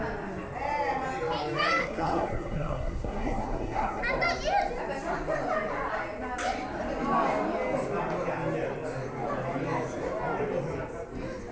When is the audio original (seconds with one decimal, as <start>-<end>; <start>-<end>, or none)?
0.0-1.8; 4.0-11.5